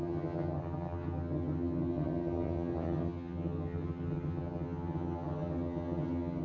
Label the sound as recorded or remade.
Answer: remade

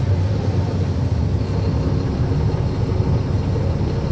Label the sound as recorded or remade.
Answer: recorded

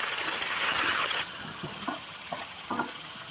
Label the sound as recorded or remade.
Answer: remade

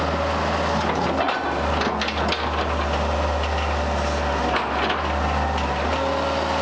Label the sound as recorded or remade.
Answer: recorded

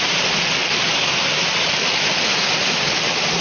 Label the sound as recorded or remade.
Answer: recorded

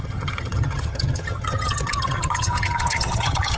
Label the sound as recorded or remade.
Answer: remade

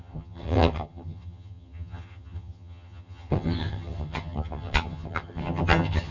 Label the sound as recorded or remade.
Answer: remade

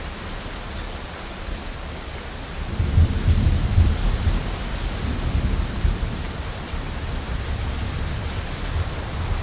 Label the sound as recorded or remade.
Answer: recorded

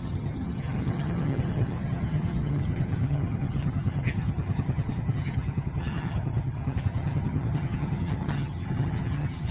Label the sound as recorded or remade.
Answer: remade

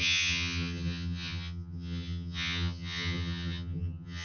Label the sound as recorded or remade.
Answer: remade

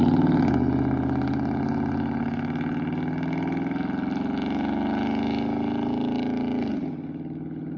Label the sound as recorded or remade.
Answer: recorded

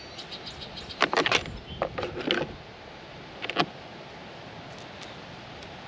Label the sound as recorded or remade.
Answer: recorded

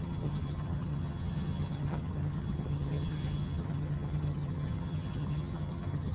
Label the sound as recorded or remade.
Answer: remade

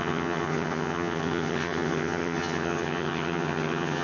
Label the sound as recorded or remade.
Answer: remade